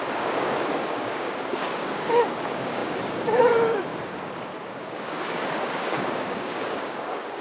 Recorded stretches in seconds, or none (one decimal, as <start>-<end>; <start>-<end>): none